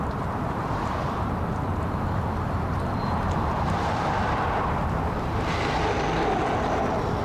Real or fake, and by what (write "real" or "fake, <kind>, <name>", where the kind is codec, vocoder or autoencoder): fake, vocoder, BigVGAN v2